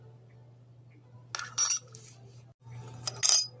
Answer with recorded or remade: recorded